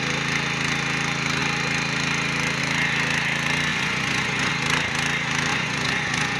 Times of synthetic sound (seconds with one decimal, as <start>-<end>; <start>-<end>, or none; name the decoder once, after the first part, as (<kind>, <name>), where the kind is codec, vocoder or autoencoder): 3.7-4.5 (vocoder, Vocos); 5.5-6.4